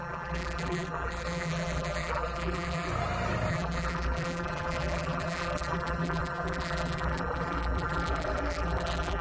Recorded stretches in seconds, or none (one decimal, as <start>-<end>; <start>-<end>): 2.9-3.5